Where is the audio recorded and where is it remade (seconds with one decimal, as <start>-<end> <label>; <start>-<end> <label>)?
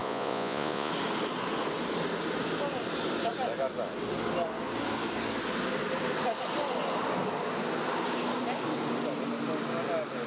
0.0-0.9 remade; 0.9-10.3 recorded